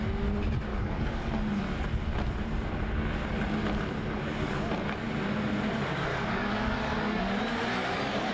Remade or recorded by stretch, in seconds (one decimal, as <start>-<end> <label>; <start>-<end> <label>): 0.0-0.7 recorded; 0.7-1.3 remade; 1.3-6.1 recorded; 6.1-7.4 remade; 7.4-8.3 recorded